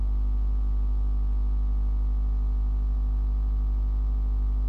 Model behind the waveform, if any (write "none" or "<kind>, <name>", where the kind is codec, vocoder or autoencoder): none